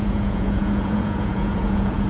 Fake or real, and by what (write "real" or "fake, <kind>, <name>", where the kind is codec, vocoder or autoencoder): fake, vocoder, Vocos